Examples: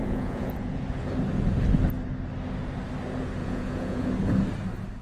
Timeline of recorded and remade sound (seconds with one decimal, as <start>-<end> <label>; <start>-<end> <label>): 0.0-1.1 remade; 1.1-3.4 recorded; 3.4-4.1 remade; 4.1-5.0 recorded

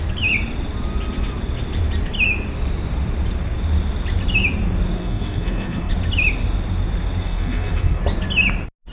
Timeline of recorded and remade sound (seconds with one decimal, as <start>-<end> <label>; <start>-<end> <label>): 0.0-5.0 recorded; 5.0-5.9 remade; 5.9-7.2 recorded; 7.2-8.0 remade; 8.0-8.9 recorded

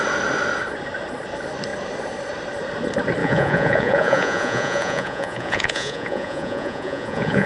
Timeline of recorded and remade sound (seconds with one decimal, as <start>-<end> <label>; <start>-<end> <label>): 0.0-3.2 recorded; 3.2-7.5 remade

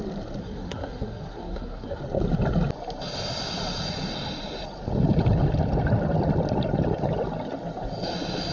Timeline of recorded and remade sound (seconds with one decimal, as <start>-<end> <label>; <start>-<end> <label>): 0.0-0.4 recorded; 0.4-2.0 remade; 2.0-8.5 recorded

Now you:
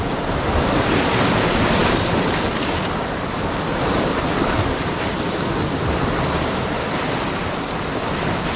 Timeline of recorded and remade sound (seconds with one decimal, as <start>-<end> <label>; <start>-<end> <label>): 0.0-8.6 recorded

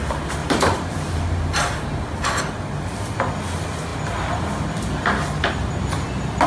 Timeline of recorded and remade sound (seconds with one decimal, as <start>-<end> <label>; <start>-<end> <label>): 0.0-0.4 recorded; 0.4-2.4 remade; 2.4-6.5 recorded